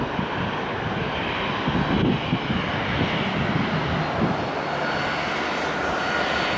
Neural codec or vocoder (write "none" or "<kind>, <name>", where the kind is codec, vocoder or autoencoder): none